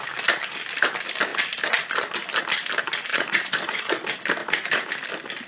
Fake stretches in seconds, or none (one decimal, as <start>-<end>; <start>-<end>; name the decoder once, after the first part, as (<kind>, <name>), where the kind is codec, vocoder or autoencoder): 3.1-3.9 (vocoder, Vocos); 4.4-4.9